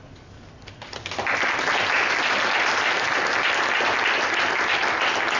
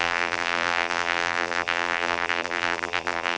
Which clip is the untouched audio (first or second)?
first